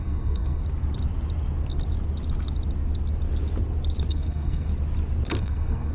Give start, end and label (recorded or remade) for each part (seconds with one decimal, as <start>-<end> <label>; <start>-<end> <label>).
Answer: 0.0-0.6 remade; 0.6-4.1 recorded; 4.1-4.7 remade; 4.7-5.4 recorded; 5.4-5.9 remade